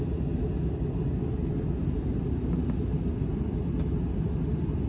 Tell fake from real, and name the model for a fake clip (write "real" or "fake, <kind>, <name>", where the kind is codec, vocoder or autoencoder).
real